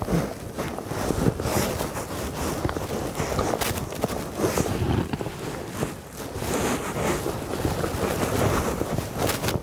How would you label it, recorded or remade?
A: recorded